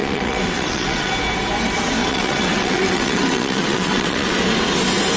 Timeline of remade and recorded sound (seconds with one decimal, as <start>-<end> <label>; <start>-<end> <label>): 0.0-1.1 remade; 1.1-2.0 recorded; 2.0-4.3 remade; 4.3-5.2 recorded